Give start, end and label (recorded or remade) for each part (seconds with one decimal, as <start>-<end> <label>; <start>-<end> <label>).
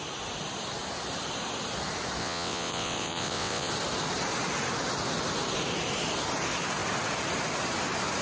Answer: 0.0-2.2 recorded; 2.2-3.7 remade; 3.7-8.2 recorded